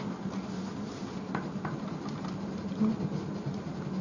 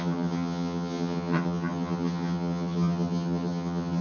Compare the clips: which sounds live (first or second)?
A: first